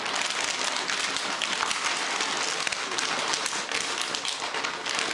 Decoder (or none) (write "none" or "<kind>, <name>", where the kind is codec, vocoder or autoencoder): none